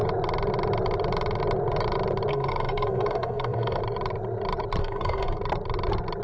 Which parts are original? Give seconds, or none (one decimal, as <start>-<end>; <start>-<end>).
0.0-2.3; 3.8-4.8; 5.4-6.2